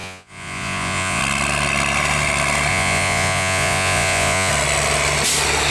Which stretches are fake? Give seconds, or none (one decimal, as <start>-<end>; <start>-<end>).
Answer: 0.0-1.2; 2.7-4.5